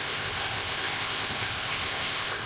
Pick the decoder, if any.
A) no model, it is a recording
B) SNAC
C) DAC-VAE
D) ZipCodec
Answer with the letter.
D